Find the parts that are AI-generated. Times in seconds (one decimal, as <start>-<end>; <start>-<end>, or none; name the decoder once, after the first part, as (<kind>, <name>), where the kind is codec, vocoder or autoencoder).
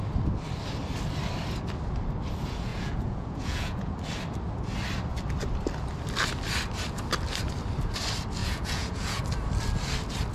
2.7-3.9 (vocoder, Vocos); 8.4-9.2